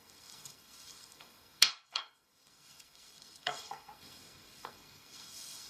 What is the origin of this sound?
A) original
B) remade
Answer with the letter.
B